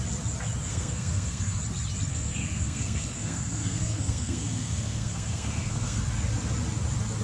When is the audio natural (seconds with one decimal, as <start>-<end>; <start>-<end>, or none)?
0.0-0.7; 1.6-2.1; 6.0-7.2